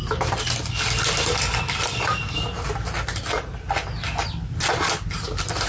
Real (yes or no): yes